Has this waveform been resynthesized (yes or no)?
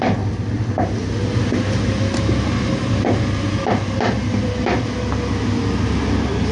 no